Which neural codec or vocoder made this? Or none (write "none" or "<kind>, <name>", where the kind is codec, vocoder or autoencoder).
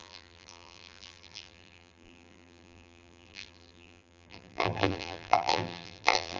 vocoder, BigVGAN v2